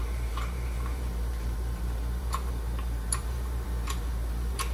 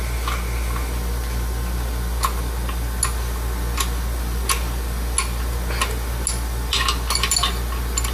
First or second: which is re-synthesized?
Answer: first